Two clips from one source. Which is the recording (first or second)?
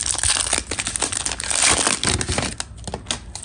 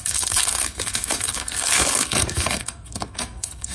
first